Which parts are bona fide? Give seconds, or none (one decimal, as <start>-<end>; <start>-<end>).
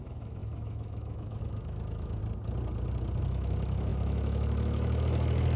2.2-3.2